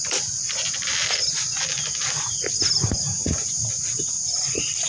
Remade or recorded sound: recorded